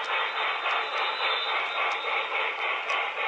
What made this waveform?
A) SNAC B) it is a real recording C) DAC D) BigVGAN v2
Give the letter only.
D